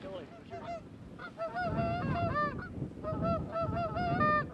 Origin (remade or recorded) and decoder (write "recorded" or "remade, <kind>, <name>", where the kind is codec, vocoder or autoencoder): recorded